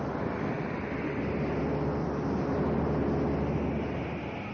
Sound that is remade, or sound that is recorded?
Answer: recorded